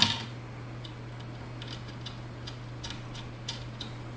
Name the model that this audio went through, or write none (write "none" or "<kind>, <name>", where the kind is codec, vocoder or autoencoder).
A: none